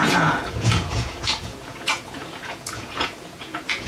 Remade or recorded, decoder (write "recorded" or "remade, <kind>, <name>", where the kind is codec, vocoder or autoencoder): remade, vocoder, Vocos